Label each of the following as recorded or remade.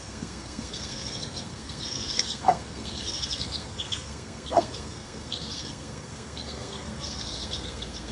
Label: remade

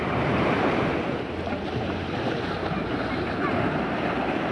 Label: remade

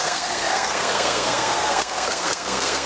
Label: remade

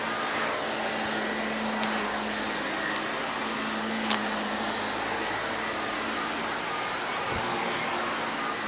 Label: recorded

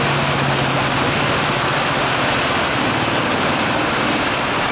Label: recorded